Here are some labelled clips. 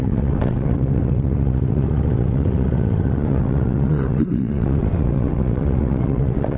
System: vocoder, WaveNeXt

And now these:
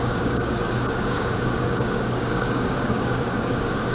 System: codec, DAC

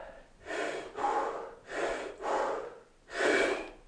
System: none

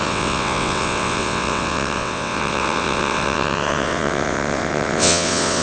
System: vocoder, WaveNeXt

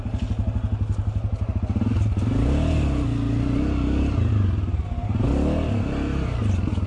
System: none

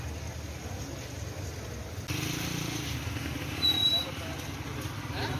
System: none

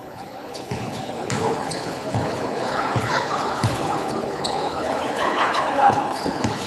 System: codec, HILCodec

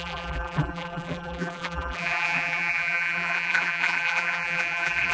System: vocoder, BigVGAN v2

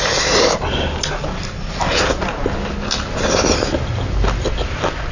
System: none